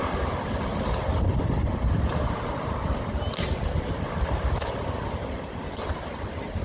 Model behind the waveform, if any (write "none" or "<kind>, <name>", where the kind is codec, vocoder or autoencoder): none